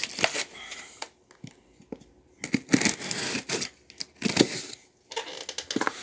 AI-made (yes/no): no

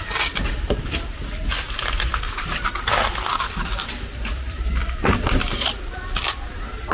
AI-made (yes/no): no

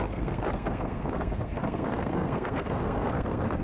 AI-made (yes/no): yes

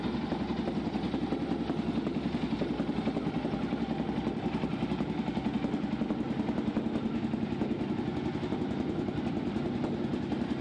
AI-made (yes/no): no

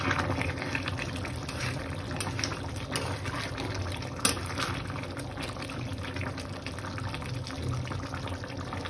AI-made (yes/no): no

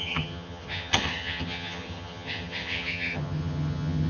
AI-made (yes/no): yes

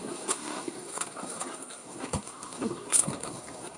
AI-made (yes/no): yes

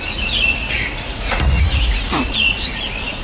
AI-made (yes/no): yes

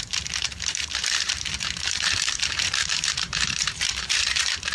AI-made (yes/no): yes